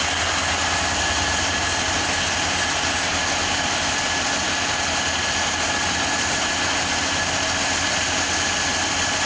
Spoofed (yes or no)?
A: no